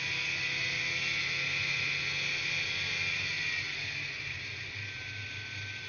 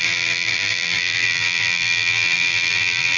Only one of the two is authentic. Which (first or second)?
first